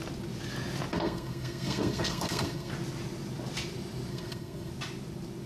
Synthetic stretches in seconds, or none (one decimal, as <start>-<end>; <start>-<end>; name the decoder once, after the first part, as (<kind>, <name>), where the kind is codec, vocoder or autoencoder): 0.9-2.7 (codec, SNAC); 4.1-4.7